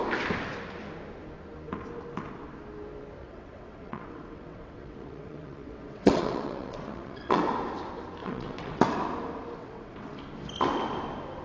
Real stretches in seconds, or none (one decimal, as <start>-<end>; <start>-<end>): 0.0-3.2; 7.4-8.2; 8.8-9.6; 10.1-11.4